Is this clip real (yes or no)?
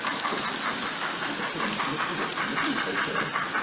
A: yes